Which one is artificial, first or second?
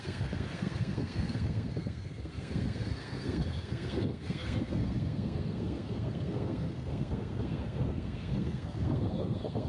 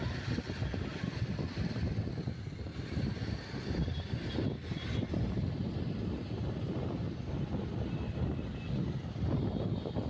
first